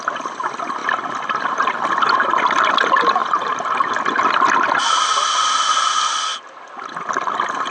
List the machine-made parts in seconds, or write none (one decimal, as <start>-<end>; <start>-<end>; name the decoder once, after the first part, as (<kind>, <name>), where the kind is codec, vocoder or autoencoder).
none